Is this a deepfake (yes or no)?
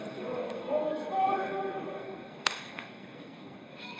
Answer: yes